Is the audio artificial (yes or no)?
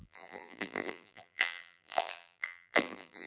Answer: yes